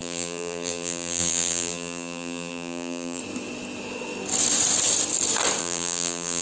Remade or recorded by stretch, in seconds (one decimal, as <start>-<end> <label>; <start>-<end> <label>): 0.0-3.2 remade; 3.2-5.6 recorded; 5.6-6.4 remade